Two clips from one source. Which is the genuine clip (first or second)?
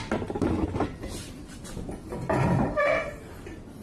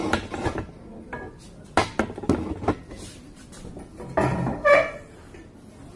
second